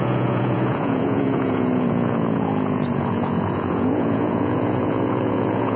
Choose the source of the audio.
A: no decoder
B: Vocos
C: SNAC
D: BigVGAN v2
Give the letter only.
B